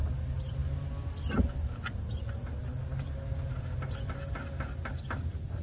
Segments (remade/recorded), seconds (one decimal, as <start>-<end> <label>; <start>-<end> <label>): 0.0-5.6 recorded